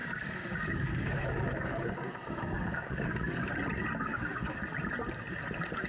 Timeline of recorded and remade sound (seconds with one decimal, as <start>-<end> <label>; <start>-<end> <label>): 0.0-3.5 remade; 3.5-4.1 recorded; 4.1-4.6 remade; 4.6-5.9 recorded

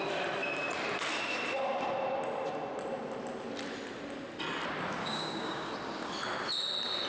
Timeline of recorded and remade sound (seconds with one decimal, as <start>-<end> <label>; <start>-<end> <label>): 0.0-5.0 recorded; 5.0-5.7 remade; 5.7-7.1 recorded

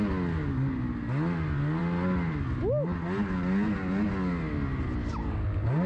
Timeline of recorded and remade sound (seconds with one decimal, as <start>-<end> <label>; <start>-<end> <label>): 0.0-5.9 recorded

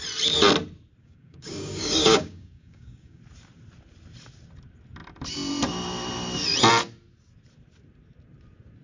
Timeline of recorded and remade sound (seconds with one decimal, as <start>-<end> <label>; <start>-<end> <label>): 0.0-1.0 recorded; 1.0-3.2 remade; 3.2-8.8 recorded

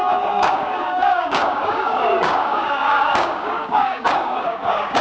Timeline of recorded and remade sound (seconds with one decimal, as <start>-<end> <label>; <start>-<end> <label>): 0.0-5.0 remade

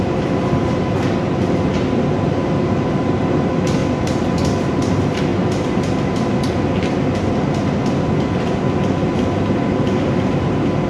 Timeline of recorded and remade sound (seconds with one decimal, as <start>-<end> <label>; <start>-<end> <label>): 0.0-10.9 recorded

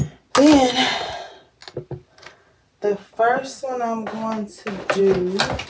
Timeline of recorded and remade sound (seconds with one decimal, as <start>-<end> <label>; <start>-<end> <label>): 0.0-5.7 recorded